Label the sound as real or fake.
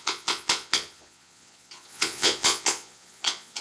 fake